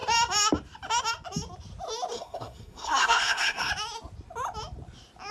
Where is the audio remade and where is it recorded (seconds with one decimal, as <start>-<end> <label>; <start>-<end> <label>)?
0.0-2.1 recorded; 2.1-3.7 remade; 3.7-5.3 recorded